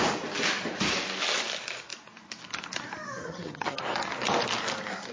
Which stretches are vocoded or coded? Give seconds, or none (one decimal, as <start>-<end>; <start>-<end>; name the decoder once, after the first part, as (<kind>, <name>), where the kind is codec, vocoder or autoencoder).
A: 3.2-3.8 (vocoder, HiFi-GAN)

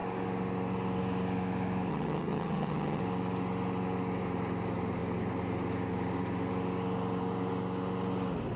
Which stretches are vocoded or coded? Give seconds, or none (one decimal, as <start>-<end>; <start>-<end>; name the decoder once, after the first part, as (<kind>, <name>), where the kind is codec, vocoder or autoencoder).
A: 1.9-3.0 (vocoder, HiFi-GAN)

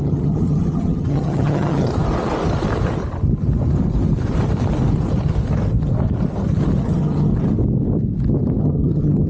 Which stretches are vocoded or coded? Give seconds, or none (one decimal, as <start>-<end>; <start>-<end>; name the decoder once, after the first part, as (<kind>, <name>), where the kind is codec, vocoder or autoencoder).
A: 0.0-1.9 (vocoder, HiFi-GAN); 6.8-7.3; 8.6-9.3

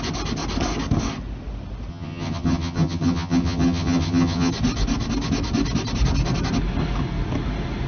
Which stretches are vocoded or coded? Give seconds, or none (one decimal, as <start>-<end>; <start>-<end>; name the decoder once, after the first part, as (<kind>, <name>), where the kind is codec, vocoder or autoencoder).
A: 1.9-4.5 (vocoder, HiFi-GAN)

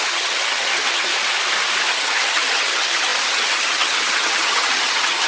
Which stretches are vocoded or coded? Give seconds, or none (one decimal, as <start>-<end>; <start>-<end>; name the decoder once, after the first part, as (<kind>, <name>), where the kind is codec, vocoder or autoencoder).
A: 0.0-1.1 (vocoder, HiFi-GAN); 1.9-5.3